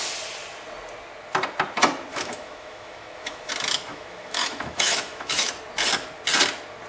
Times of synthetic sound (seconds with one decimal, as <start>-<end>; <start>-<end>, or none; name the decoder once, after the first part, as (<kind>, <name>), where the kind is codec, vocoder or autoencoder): 2.1-3.5 (autoencoder, DAC-VAE); 3.9-5.5